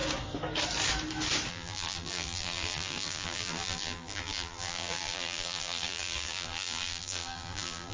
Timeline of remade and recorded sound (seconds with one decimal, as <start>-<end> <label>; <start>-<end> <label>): 0.0-1.5 recorded; 1.5-7.9 remade

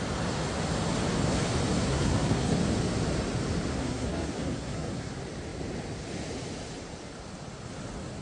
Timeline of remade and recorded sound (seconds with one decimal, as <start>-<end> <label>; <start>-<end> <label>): 0.0-1.8 recorded; 1.8-2.6 remade; 2.6-3.7 recorded; 3.7-5.1 remade; 5.1-8.2 recorded

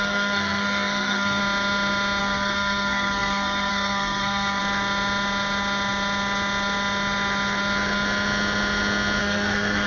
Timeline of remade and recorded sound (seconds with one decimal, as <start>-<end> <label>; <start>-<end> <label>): 0.0-1.4 remade; 1.4-2.2 recorded; 2.2-4.6 remade; 4.6-9.2 recorded; 9.2-9.9 remade